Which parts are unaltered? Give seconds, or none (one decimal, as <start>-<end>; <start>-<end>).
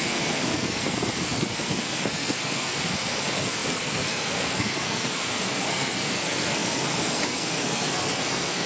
none